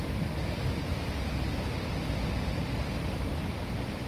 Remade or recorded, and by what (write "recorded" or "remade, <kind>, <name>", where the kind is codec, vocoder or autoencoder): recorded